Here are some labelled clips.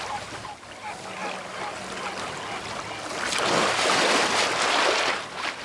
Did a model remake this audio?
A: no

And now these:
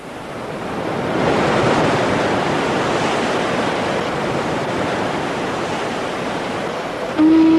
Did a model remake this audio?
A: no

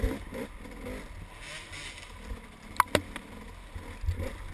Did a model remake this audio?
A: no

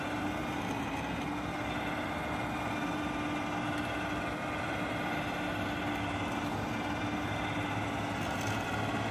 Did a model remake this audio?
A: no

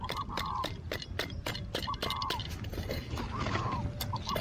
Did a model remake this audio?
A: no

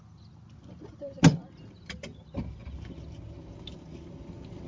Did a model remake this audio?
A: no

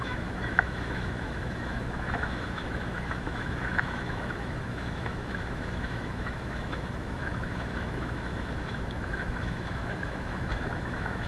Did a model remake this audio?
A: yes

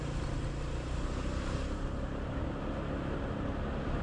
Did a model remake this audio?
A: no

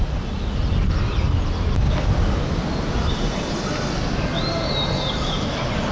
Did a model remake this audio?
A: no